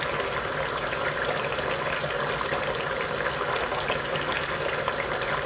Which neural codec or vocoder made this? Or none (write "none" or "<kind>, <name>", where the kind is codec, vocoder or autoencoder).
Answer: none